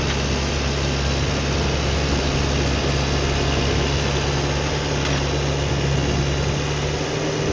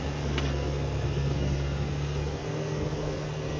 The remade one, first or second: second